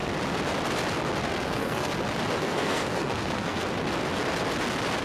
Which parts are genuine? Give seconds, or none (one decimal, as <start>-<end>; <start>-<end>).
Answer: 0.0-1.2; 1.9-2.4; 3.7-5.0